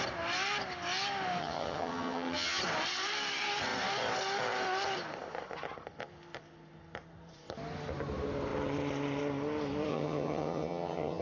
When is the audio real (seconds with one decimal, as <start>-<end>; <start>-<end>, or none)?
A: 0.0-1.4; 2.6-9.9